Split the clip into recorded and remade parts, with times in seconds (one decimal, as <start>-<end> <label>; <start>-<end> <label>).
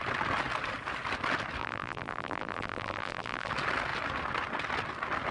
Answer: 0.0-1.6 recorded; 1.6-3.5 remade; 3.5-5.3 recorded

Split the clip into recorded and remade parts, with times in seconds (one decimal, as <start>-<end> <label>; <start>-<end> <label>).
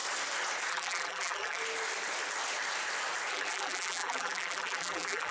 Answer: 0.0-0.7 recorded; 0.7-1.6 remade; 1.6-3.3 recorded; 3.3-5.3 remade